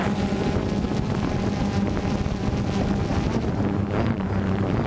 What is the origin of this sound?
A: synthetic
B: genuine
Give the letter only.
B